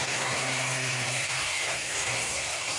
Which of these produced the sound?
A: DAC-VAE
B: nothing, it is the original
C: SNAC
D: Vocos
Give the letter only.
C